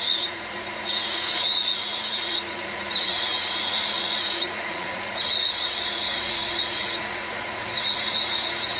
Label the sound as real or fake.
fake